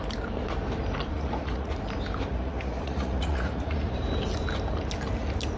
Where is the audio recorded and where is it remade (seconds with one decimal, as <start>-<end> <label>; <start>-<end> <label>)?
0.0-1.1 recorded; 1.1-1.7 remade; 1.7-2.3 recorded; 2.3-4.0 remade; 4.0-5.6 recorded